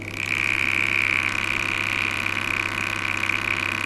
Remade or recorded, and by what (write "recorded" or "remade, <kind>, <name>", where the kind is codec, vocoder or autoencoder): recorded